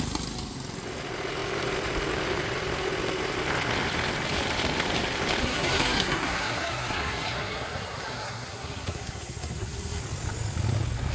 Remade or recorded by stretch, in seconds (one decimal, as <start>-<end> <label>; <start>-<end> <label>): 0.0-5.4 recorded; 5.4-10.0 remade; 10.0-11.1 recorded